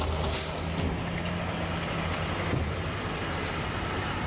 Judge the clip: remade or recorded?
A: recorded